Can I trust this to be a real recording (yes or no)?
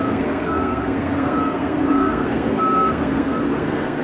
no